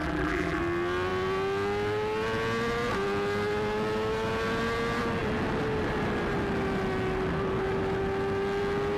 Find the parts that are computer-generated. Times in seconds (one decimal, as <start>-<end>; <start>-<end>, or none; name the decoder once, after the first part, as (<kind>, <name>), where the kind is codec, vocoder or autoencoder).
0.0-0.6 (vocoder, BigVGAN v2)